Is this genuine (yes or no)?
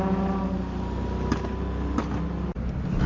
yes